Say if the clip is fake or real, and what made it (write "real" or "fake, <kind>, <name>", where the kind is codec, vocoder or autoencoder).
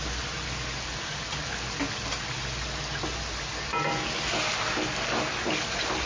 real